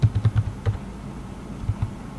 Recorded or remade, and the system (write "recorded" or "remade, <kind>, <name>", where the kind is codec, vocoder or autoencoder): recorded